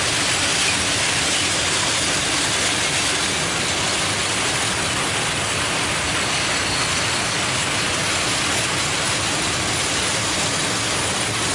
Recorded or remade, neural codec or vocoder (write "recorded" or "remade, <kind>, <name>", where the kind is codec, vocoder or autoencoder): recorded